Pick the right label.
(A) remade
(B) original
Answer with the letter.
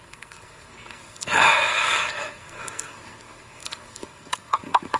A